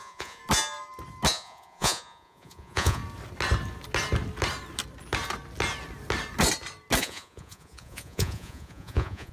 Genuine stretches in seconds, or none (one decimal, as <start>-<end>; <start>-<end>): 0.4-1.3; 3.0-7.0